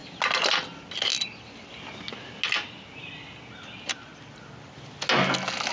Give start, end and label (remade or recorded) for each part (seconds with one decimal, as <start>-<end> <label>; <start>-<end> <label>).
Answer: 0.0-5.7 recorded